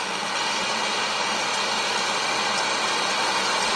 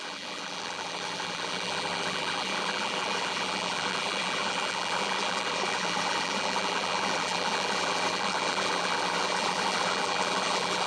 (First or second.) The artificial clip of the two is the second